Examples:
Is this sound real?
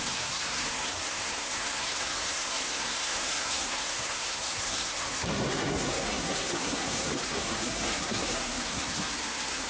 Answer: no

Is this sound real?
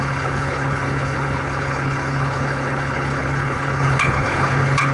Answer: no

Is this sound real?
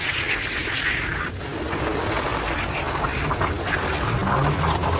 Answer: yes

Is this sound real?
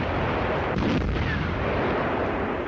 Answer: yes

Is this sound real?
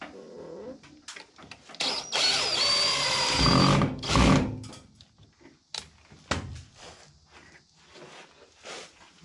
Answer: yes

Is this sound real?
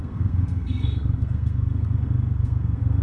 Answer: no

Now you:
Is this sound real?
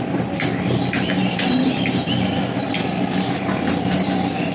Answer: no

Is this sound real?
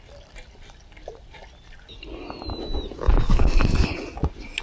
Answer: yes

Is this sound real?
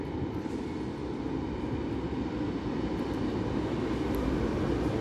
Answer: yes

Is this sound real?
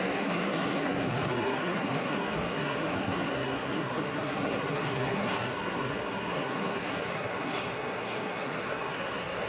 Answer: no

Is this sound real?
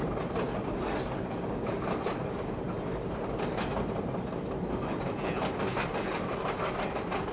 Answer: yes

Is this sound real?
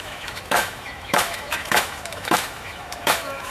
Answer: no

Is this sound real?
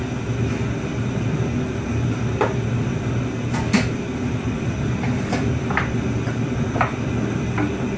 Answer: yes